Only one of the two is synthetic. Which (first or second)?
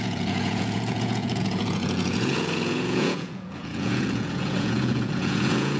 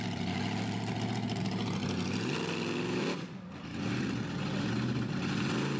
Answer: first